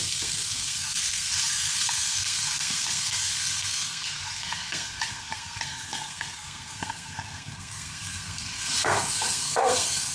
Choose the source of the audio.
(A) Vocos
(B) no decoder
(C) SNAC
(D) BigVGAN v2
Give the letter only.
C